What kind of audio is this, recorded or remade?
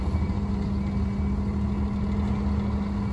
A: recorded